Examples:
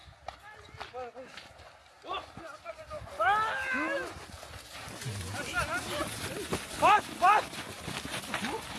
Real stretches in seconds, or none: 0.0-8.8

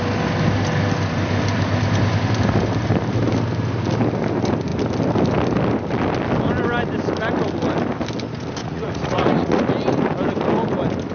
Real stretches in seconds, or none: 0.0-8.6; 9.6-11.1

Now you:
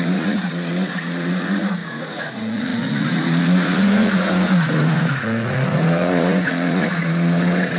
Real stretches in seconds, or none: none